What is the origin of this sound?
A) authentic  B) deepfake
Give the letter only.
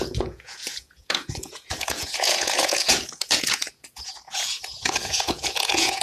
B